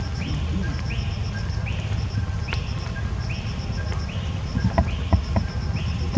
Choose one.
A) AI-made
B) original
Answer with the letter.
B